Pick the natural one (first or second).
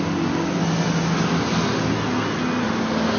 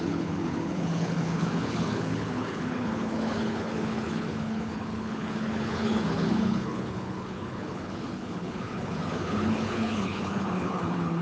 first